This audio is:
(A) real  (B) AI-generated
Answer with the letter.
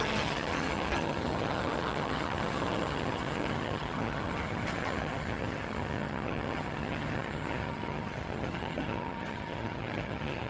B